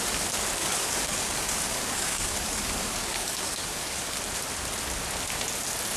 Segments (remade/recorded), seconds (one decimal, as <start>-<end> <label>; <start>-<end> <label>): 0.0-0.6 recorded; 0.6-4.2 remade; 4.2-6.0 recorded